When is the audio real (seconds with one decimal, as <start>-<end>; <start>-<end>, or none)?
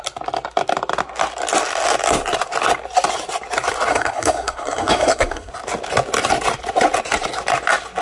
0.0-3.9; 5.5-8.0